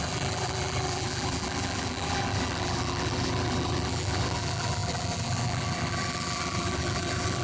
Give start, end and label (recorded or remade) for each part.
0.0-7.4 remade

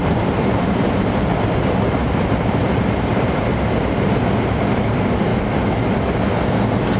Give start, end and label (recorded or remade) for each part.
0.0-4.2 remade; 4.2-7.0 recorded

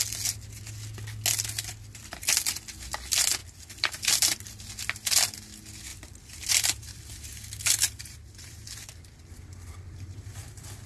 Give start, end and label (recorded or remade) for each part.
0.0-3.4 recorded; 3.4-4.6 remade; 4.6-5.9 recorded; 5.9-10.9 remade

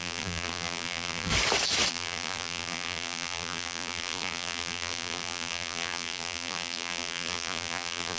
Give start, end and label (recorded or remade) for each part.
0.0-1.3 remade; 1.3-1.9 recorded; 1.9-8.2 remade

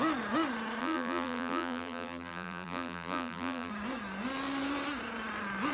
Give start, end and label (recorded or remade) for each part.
0.0-0.8 recorded; 0.8-3.7 remade; 3.7-5.7 recorded

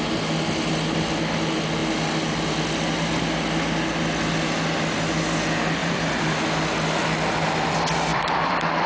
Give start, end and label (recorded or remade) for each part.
0.0-5.8 recorded; 5.8-6.4 remade; 6.4-8.1 recorded; 8.1-8.9 remade

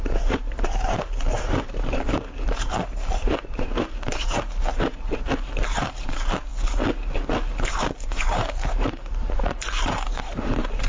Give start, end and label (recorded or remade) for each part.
0.0-6.5 remade; 6.5-7.7 recorded; 7.7-10.9 remade

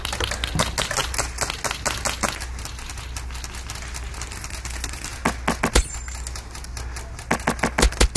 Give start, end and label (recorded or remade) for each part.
0.0-8.2 recorded